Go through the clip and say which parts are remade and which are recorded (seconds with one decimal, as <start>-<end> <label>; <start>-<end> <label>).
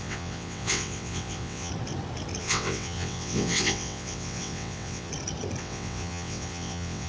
0.0-1.7 remade; 1.7-2.4 recorded; 2.4-5.1 remade; 5.1-5.6 recorded; 5.6-7.1 remade